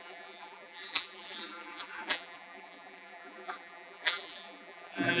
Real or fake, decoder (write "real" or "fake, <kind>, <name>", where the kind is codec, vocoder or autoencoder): fake, vocoder, BigVGAN v2